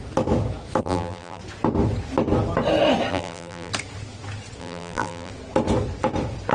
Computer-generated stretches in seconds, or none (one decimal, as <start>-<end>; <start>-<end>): 0.8-1.4; 3.1-3.7; 4.6-5.3